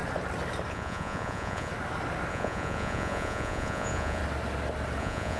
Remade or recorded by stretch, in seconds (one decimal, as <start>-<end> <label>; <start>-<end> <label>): 0.0-0.7 recorded; 0.7-1.7 remade; 1.7-2.3 recorded; 2.3-4.2 remade; 4.2-5.0 recorded; 5.0-5.4 remade